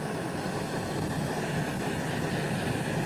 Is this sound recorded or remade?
recorded